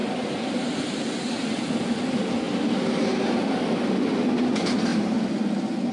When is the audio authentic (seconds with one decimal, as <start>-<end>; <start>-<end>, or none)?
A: 0.0-5.9